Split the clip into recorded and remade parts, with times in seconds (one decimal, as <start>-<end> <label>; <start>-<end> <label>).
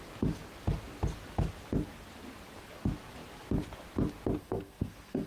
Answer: 0.0-4.4 recorded; 4.4-5.3 remade